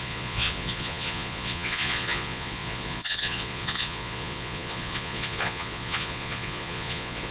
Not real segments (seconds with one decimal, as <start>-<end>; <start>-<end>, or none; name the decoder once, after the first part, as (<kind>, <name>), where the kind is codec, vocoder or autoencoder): 0.0-7.3 (vocoder, Vocos)